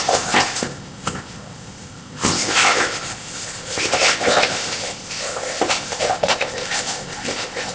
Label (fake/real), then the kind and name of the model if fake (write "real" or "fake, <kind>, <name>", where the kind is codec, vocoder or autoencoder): fake, codec, ZipCodec